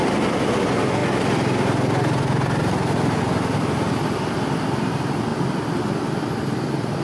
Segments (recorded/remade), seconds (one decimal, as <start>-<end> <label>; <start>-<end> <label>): 0.0-7.0 recorded